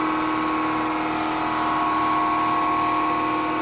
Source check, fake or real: real